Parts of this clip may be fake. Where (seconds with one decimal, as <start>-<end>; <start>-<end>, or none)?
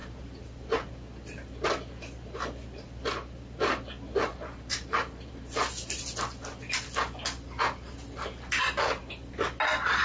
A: 0.0-0.5; 4.3-5.3